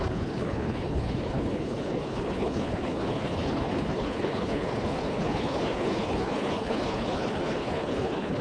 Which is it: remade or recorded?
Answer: remade